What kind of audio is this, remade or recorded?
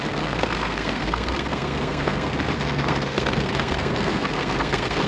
remade